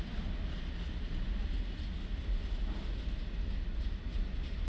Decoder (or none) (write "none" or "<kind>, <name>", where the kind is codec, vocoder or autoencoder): none